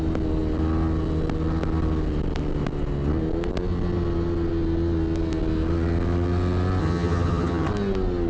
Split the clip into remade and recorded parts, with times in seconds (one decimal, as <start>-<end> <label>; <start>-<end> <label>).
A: 0.0-6.8 recorded; 6.8-7.7 remade; 7.7-8.3 recorded